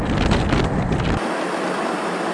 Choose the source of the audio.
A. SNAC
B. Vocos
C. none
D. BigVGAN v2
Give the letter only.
C